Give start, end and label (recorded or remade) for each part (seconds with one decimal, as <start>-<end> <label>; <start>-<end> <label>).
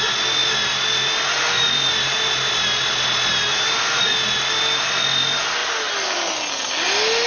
0.0-7.3 recorded